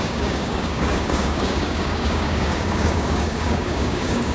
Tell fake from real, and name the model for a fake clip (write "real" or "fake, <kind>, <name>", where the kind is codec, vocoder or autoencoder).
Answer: fake, codec, DAC